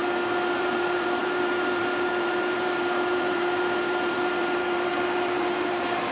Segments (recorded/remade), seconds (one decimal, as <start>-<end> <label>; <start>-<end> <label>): 0.0-0.6 recorded; 0.6-6.1 remade